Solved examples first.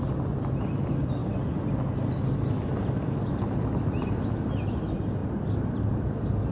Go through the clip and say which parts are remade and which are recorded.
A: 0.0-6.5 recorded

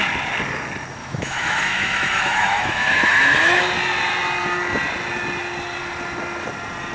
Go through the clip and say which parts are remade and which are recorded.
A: 0.0-1.0 recorded; 1.0-3.6 remade; 3.6-6.9 recorded